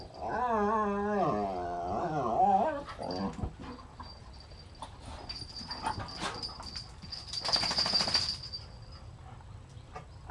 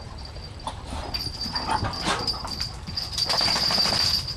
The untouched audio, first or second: first